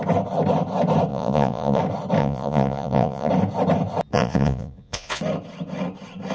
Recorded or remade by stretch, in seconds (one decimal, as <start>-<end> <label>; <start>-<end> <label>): 0.0-1.1 recorded; 1.1-1.8 remade; 1.8-2.2 recorded; 2.2-3.3 remade; 3.3-4.1 recorded; 4.1-5.2 remade; 5.2-6.3 recorded